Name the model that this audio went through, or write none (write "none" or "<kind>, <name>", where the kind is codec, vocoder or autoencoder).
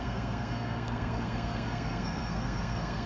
codec, SNAC